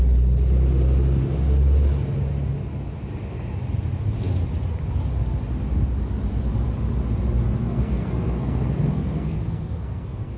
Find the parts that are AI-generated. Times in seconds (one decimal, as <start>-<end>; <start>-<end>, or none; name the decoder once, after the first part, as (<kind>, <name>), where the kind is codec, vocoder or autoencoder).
7.6-10.4 (codec, SNAC)